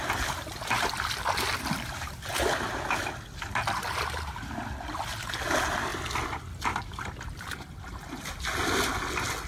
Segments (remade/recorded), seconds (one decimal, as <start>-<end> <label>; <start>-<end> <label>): 0.0-9.5 recorded

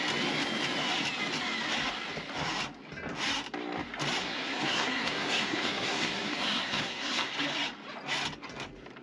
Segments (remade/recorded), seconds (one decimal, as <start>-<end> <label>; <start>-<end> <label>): 0.0-4.2 recorded; 4.2-7.3 remade; 7.3-9.0 recorded

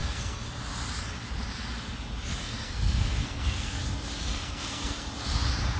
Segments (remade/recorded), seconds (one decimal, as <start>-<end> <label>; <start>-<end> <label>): 0.0-0.5 remade; 0.5-2.3 recorded; 2.3-3.8 remade; 3.8-4.2 recorded; 4.2-5.1 remade; 5.1-5.8 recorded

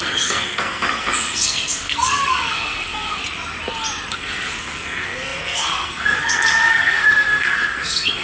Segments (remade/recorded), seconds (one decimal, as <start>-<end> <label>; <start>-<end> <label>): 0.0-3.2 remade; 3.2-4.1 recorded; 4.1-8.2 remade

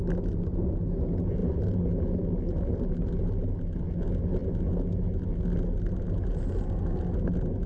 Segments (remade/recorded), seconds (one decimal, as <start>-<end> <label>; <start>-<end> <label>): 0.0-7.7 recorded

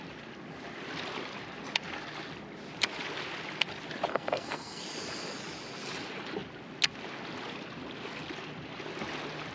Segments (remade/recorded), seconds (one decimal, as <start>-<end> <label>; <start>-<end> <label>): 0.0-4.1 recorded; 4.1-4.8 remade; 4.8-9.5 recorded